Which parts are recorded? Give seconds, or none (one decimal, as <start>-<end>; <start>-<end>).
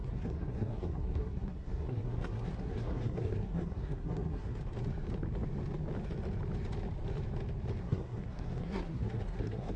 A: 4.6-7.8